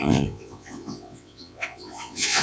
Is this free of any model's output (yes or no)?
no